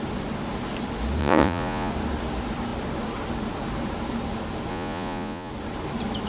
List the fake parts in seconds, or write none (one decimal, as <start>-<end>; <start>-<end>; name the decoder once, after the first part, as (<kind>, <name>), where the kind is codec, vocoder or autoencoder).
1.2-1.9 (vocoder, Vocos); 4.7-5.5